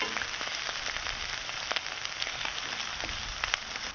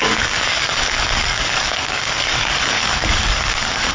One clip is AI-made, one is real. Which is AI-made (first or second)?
second